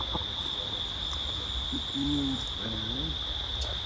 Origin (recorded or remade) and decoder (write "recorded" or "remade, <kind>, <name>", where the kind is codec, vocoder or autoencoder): remade, vocoder, BigVGAN v2